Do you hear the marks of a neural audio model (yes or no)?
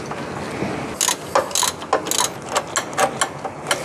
no